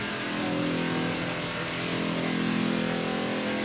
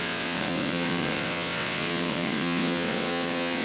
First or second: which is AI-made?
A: second